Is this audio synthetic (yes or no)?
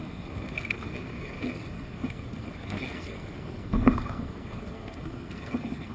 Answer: yes